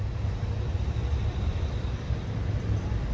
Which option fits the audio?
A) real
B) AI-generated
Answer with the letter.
B